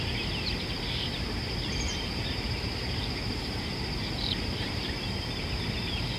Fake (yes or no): yes